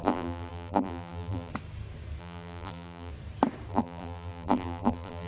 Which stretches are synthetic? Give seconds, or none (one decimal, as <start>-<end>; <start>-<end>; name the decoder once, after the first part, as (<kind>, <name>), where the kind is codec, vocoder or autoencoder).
0.0-1.5 (vocoder, BigVGAN v2); 2.2-3.1; 3.7-5.3